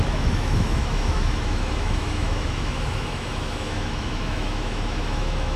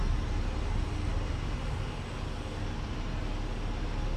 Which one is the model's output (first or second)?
first